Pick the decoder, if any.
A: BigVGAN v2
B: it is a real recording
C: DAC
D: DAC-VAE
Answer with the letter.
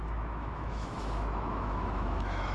D